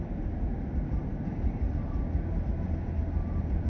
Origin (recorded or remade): recorded